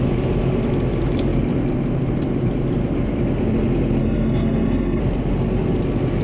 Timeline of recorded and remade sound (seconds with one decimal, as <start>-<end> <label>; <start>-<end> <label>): 0.0-4.0 recorded; 4.0-5.0 remade; 5.0-6.2 recorded